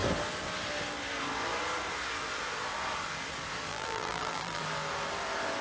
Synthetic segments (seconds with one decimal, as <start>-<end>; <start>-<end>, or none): 3.7-4.6

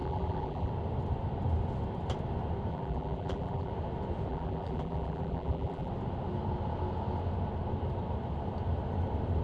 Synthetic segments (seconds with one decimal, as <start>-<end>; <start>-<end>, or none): 0.0-0.7; 2.7-3.7; 4.3-5.9